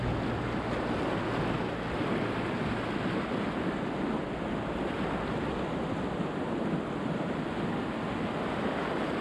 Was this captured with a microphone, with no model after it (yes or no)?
yes